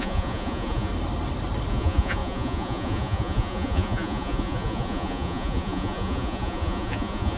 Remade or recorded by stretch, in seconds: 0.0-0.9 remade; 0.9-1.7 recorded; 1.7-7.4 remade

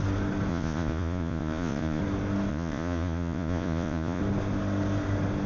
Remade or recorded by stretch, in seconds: 0.0-0.5 recorded; 0.5-2.0 remade; 2.0-2.5 recorded; 2.5-4.2 remade; 4.2-5.5 recorded

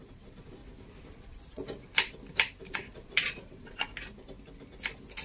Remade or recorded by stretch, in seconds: 0.0-0.6 remade; 0.6-1.1 recorded; 1.1-1.6 remade; 1.6-2.7 recorded; 2.7-3.9 remade; 3.9-5.2 recorded

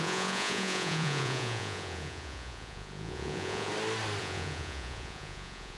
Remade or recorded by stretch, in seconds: 0.0-3.7 remade; 3.7-4.2 recorded; 4.2-5.8 remade